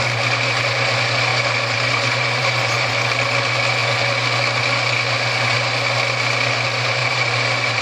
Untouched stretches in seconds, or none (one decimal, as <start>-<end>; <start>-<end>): 0.0-1.3; 2.9-7.0